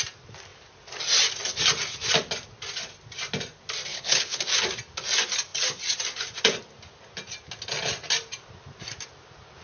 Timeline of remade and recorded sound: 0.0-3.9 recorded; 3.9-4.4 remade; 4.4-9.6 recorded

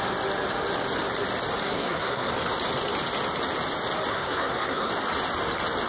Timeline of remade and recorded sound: 0.0-1.6 recorded; 1.6-2.3 remade; 2.3-4.1 recorded; 4.1-4.9 remade; 4.9-5.9 recorded

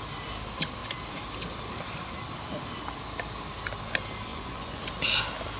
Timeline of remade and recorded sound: 0.0-4.3 recorded; 4.3-4.8 remade; 4.8-5.6 recorded